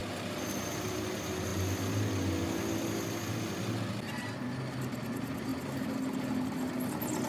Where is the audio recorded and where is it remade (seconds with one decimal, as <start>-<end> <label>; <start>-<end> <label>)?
0.0-5.5 recorded; 5.5-6.0 remade; 6.0-7.3 recorded